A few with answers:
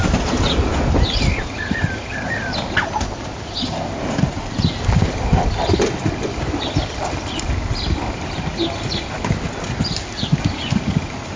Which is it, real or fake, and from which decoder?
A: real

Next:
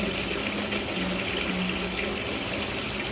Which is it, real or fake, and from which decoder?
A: real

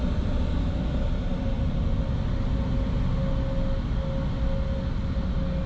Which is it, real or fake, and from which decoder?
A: real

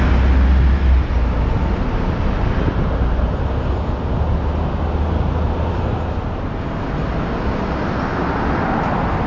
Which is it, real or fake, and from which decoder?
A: real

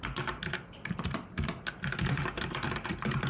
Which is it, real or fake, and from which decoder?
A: real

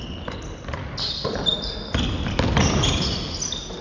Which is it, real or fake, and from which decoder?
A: real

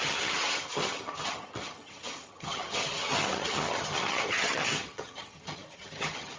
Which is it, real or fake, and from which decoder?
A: fake, vocoder, HiFi-GAN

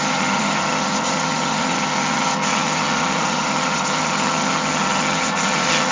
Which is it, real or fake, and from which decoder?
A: fake, vocoder, HiFi-GAN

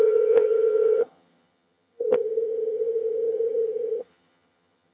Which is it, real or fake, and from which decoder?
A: fake, vocoder, HiFi-GAN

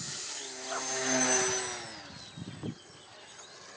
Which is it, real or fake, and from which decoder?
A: real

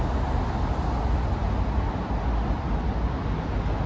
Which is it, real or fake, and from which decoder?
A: real